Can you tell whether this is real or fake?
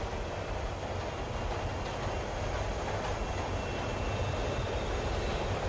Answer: real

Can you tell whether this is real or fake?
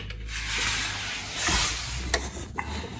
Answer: real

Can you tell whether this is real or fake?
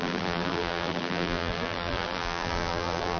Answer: fake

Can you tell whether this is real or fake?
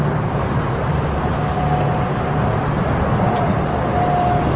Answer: real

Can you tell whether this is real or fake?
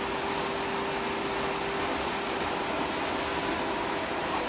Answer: real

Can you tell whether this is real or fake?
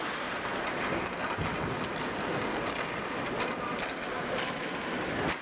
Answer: real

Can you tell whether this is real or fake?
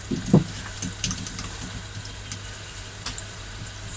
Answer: real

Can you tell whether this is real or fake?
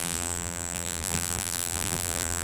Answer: fake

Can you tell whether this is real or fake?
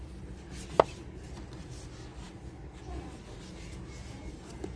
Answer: real